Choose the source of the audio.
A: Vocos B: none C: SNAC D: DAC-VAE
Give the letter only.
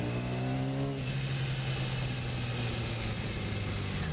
B